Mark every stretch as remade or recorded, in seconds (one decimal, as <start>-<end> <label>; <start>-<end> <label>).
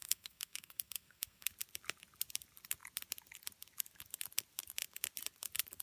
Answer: 0.0-1.5 remade; 1.5-5.8 recorded